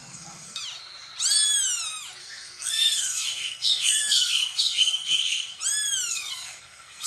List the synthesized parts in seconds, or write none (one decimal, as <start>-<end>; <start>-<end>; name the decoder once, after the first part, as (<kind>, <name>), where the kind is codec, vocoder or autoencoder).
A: 0.0-0.6 (codec, SNAC); 2.2-5.6; 6.1-7.1

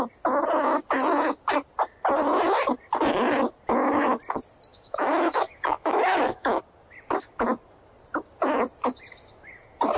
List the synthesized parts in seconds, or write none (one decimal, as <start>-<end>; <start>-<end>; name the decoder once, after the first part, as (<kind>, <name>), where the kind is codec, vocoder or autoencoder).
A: 4.7-6.6 (autoencoder, DAC-VAE)

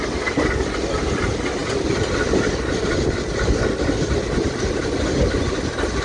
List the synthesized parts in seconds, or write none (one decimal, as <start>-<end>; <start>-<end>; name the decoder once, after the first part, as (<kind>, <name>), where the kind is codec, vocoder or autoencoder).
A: none

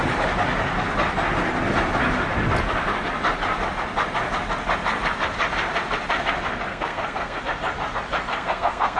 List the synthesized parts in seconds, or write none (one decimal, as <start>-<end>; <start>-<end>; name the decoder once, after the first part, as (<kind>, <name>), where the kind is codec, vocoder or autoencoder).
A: 6.7-7.4 (codec, SNAC); 8.3-9.0